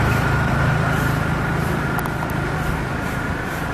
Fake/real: fake